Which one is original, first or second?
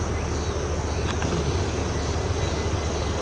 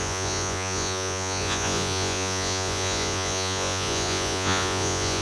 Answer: first